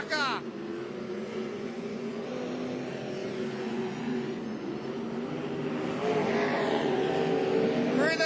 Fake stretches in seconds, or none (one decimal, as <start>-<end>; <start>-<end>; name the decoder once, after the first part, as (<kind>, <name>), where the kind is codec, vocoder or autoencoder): 1.1-2.2 (vocoder, Vocos); 3.2-4.9; 6.5-7.1